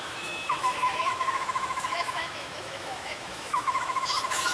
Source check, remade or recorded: remade